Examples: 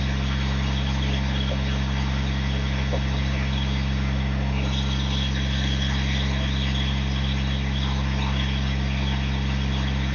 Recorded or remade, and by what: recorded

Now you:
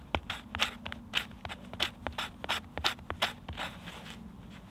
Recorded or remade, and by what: recorded